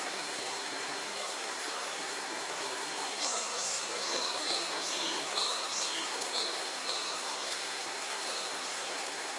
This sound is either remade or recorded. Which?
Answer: remade